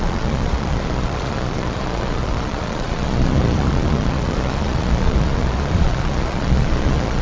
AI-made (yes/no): yes